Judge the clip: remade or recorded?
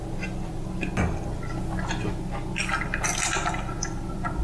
recorded